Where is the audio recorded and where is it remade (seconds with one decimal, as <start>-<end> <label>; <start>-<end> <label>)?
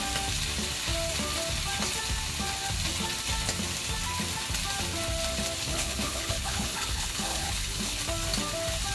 0.0-5.7 recorded; 5.7-8.0 remade; 8.0-8.9 recorded